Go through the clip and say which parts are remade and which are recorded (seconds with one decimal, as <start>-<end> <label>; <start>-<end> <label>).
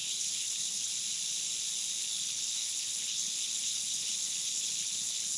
0.0-0.9 remade; 0.9-2.0 recorded; 2.0-5.4 remade